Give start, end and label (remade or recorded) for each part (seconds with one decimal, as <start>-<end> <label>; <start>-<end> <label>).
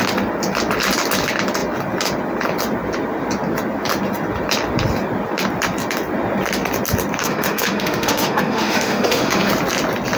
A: 0.0-7.2 recorded; 7.2-9.5 remade; 9.5-10.2 recorded